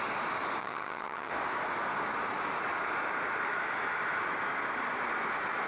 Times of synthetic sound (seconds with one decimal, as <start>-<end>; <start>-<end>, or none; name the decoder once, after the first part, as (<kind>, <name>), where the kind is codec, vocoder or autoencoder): 0.6-1.3 (vocoder, HiFi-GAN)